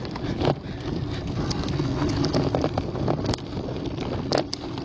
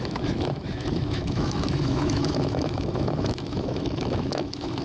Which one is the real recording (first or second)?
first